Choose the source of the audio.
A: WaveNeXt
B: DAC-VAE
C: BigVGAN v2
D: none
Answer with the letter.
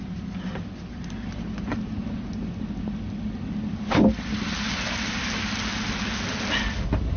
D